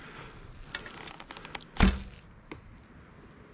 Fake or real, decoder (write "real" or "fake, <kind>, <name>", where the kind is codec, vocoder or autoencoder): real